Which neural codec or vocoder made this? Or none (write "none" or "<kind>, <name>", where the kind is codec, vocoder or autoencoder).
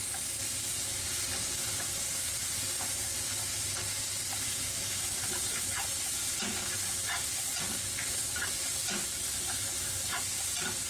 none